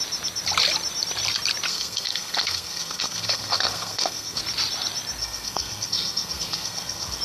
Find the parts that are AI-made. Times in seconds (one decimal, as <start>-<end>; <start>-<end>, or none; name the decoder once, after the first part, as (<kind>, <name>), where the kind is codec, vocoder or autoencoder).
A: 1.7-4.4 (codec, SNAC); 5.2-7.2